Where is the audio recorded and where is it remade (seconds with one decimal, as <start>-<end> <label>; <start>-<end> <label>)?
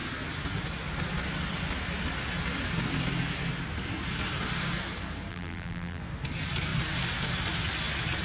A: 0.0-5.3 recorded; 5.3-6.0 remade; 6.0-8.2 recorded